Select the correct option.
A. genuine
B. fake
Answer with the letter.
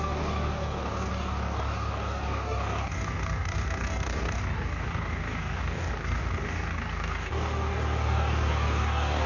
B